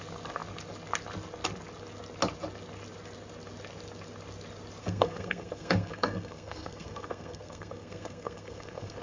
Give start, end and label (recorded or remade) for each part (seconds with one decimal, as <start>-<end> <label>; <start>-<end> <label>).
0.0-4.8 recorded; 4.8-9.0 remade